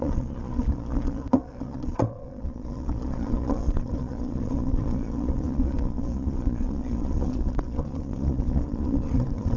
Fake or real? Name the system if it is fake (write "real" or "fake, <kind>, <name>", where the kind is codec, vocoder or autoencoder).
fake, vocoder, Vocos